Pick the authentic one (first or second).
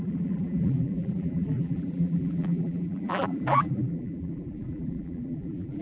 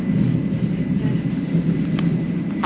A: second